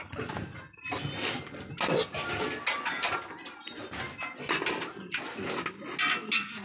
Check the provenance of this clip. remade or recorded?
recorded